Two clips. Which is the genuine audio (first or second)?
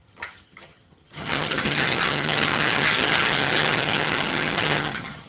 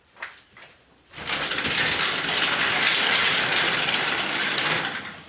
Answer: second